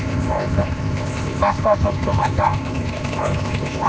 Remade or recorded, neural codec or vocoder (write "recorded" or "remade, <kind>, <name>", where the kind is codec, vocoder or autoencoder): remade, codec, ZipCodec